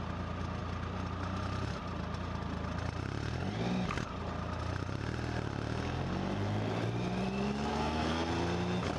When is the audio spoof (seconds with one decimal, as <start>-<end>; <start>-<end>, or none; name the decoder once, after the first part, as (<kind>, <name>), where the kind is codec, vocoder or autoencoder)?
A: 7.7-8.3 (codec, SNAC)